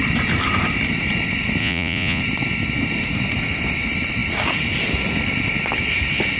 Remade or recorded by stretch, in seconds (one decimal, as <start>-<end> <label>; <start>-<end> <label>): 0.0-1.6 recorded; 1.6-2.2 remade; 2.2-6.4 recorded